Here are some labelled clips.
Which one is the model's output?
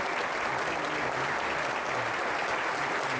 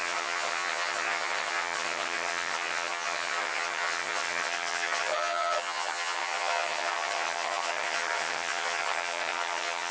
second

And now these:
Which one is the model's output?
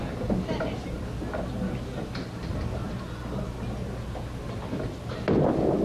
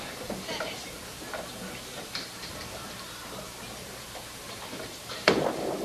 second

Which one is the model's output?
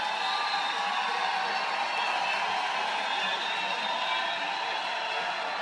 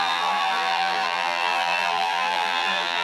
second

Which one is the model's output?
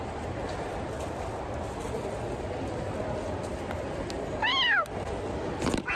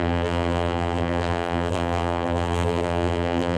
second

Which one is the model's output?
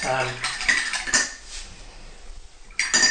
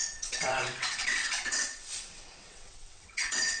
second